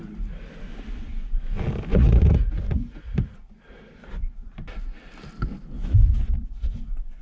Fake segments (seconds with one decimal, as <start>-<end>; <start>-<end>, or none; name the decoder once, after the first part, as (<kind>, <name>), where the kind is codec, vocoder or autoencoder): 1.9-3.0 (vocoder, Vocos)